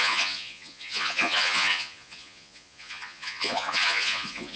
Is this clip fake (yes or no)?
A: yes